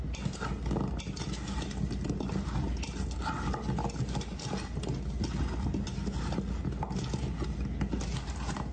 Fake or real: real